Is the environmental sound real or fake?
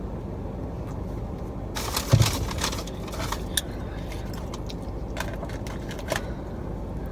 real